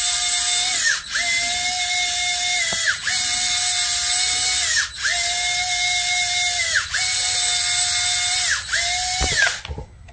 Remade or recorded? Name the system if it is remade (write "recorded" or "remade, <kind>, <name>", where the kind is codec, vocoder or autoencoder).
recorded